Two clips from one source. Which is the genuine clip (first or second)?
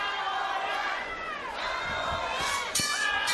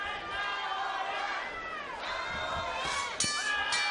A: second